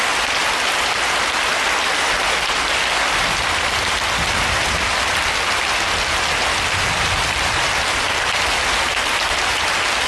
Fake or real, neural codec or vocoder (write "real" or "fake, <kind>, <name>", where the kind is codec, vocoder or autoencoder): real